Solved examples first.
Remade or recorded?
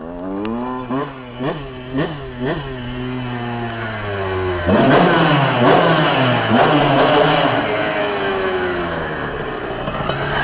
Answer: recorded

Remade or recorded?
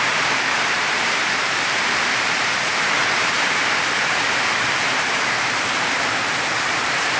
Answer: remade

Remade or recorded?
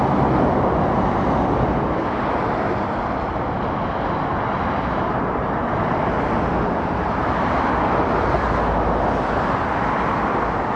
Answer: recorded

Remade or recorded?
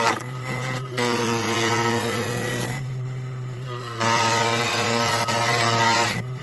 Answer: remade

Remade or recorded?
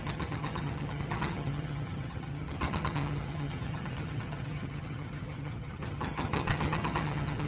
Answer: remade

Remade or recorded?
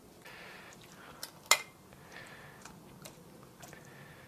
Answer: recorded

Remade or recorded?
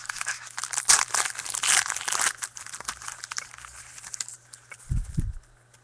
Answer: recorded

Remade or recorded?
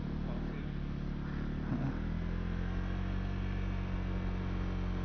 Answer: recorded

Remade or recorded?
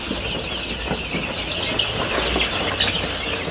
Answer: recorded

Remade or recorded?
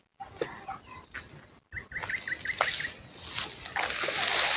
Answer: recorded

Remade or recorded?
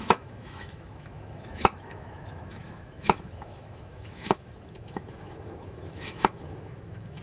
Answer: remade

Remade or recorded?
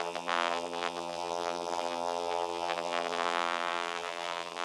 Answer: remade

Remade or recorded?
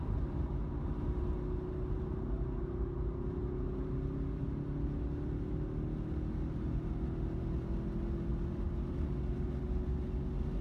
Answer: recorded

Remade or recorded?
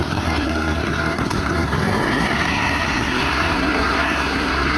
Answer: remade